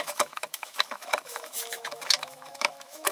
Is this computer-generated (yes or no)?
yes